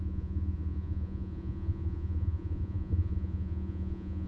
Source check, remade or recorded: remade